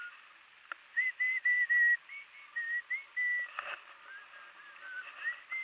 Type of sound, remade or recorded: recorded